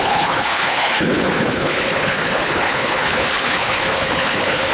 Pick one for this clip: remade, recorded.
remade